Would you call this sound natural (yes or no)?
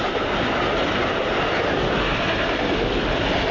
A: yes